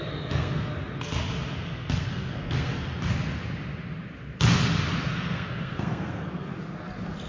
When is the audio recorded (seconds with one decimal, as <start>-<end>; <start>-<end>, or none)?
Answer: 0.7-1.6; 3.1-5.0; 6.5-7.3